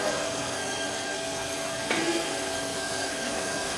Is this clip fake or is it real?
fake